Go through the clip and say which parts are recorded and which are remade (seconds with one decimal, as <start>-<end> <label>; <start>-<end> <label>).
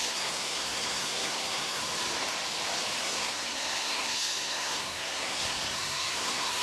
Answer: 0.0-1.8 remade; 1.8-3.0 recorded; 3.0-6.6 remade